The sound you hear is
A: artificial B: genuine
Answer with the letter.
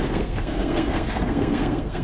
A